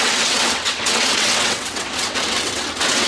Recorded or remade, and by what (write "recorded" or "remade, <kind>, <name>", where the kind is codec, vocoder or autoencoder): remade, vocoder, WaveNeXt